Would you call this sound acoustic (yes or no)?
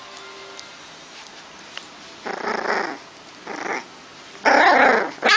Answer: yes